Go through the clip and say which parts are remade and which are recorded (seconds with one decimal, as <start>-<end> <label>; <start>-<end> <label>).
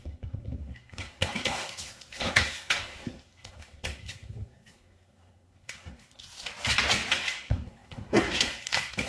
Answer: 0.0-6.5 remade; 6.5-7.1 recorded; 7.1-9.1 remade